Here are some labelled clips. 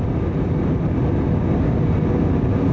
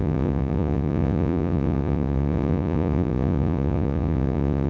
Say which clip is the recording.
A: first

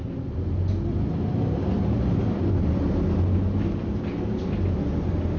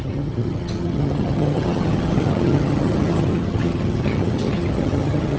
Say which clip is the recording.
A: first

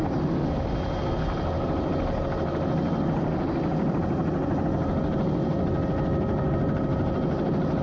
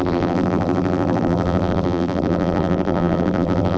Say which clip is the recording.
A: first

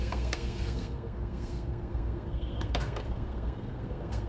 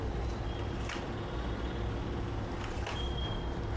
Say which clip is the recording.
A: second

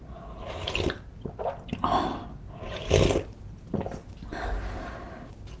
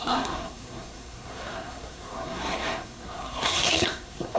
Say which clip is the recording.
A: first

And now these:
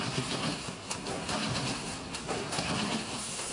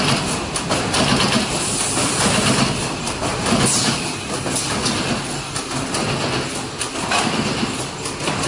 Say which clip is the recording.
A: second